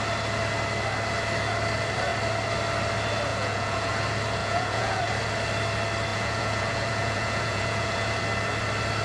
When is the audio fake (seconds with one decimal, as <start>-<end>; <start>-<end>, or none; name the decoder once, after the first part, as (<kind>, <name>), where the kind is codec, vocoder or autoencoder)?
3.3-3.9 (vocoder, Vocos); 4.4-5.0; 6.1-8.2